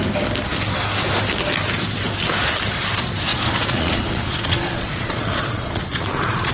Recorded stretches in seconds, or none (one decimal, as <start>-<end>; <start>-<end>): 0.0-3.3